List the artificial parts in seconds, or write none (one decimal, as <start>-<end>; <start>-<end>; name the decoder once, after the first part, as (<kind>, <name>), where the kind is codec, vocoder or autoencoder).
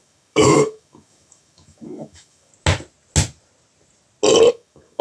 0.0-2.5 (autoencoder, DAC-VAE); 4.5-5.0